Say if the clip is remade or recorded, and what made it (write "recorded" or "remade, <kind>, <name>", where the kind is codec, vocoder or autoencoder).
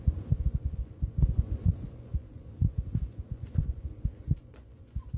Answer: remade, vocoder, Vocos